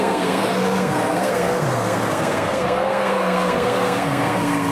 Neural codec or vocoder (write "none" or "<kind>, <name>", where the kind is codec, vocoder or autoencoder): codec, SNAC